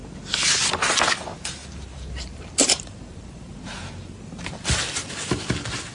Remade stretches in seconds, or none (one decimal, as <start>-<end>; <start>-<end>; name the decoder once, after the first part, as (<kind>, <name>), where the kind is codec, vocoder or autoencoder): 1.6-5.1 (vocoder, BigVGAN v2)